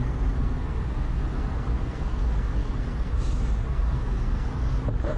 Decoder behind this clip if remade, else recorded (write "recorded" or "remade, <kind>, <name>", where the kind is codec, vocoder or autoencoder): remade, codec, SNAC